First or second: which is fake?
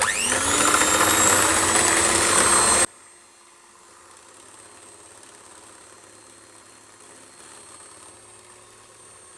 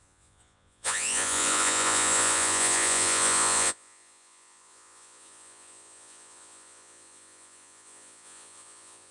second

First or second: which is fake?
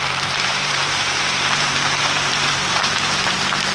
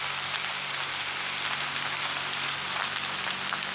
first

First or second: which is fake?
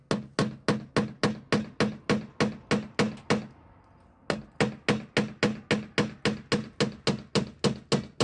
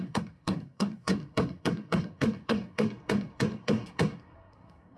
second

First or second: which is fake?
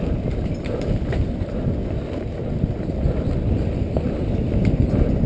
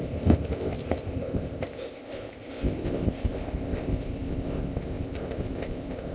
second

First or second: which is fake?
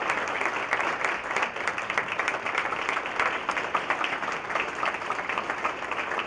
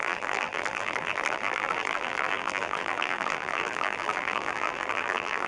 second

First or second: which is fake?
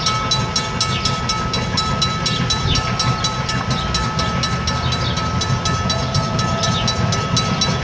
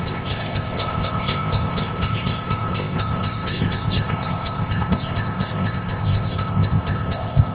second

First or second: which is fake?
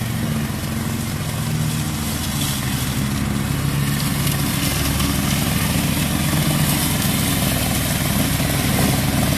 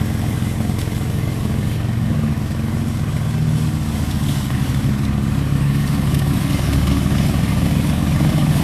second